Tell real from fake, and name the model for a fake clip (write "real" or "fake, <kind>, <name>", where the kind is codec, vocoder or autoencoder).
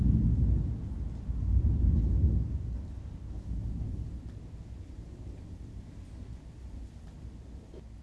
real